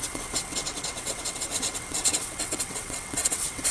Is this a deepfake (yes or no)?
yes